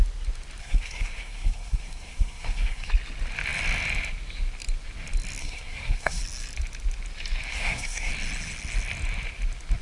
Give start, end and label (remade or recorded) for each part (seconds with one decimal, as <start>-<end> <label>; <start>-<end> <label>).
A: 0.0-0.6 recorded; 0.6-2.9 remade; 2.9-5.4 recorded; 5.4-6.2 remade; 6.2-7.5 recorded; 7.5-8.1 remade; 8.1-9.8 recorded